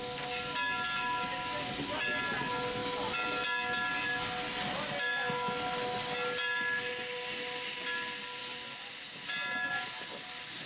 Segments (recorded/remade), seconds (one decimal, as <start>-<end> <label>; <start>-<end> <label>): 0.0-10.7 recorded

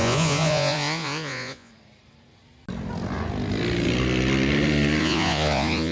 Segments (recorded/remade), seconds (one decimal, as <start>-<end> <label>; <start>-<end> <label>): 0.0-1.7 remade; 1.7-5.0 recorded; 5.0-5.9 remade

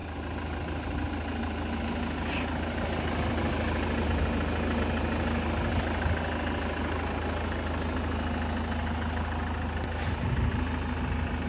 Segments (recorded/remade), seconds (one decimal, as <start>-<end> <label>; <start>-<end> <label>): 0.0-11.5 recorded

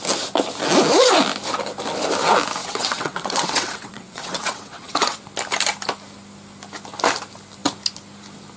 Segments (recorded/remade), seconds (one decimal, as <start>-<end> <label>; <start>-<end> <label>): 0.0-2.6 recorded; 2.6-5.2 remade; 5.2-8.6 recorded

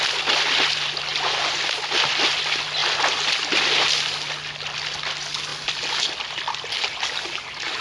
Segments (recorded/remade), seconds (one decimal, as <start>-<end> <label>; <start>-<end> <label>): 0.0-1.1 recorded; 1.1-1.6 remade; 1.6-7.8 recorded

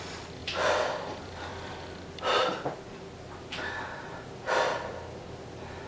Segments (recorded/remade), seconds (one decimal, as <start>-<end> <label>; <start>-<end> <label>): 0.0-0.4 recorded; 0.4-1.7 remade; 1.7-5.9 recorded